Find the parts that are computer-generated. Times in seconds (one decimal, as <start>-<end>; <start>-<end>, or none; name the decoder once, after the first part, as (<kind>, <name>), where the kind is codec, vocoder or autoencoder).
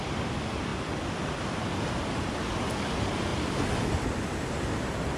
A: none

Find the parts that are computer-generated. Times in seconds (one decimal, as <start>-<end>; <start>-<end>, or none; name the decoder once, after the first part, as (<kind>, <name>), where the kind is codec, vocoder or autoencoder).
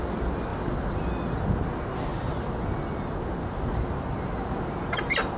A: none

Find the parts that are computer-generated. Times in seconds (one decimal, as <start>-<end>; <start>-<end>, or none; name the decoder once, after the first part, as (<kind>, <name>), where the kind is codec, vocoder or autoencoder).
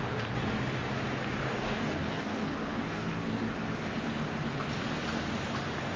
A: 1.4-3.5 (codec, DAC)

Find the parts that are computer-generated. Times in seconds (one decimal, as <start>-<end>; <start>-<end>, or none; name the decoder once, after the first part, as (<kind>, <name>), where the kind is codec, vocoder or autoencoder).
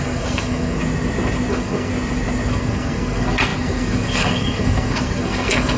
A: 0.0-0.8 (codec, SNAC); 1.5-1.9; 2.5-5.8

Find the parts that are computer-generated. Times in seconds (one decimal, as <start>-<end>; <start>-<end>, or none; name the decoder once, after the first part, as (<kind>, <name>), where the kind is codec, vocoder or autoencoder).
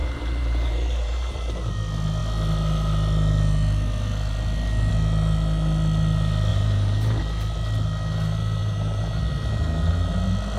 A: 0.0-1.7 (vocoder, BigVGAN v2); 6.5-7.2; 8.6-9.2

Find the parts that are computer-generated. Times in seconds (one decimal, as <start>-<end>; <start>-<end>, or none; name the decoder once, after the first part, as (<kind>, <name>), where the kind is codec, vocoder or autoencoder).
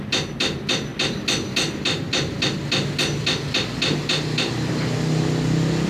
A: none